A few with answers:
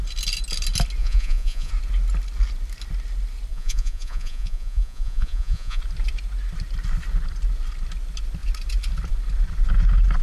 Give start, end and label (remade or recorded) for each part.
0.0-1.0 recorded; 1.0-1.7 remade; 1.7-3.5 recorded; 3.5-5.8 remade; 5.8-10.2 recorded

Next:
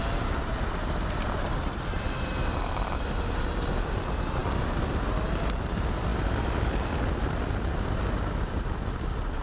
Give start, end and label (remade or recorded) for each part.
0.0-9.4 recorded

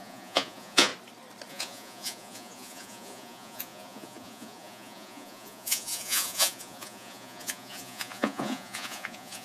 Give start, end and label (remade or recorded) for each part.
0.0-0.9 remade; 0.9-1.5 recorded; 1.5-9.4 remade

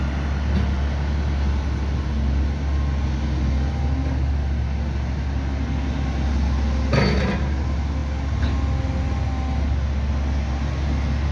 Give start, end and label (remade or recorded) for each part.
0.0-11.3 recorded

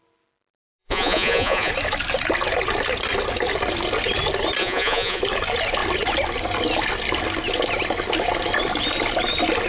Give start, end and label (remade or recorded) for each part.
0.0-0.8 recorded; 0.8-1.7 remade; 1.7-4.6 recorded; 4.6-5.2 remade; 5.2-9.7 recorded